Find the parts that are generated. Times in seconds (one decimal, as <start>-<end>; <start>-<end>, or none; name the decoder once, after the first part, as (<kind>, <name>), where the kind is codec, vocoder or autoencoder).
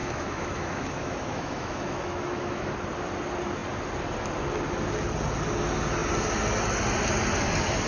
0.0-2.7 (autoencoder, DAC-VAE)